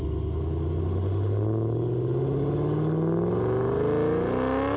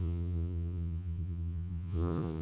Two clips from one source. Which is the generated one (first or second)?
second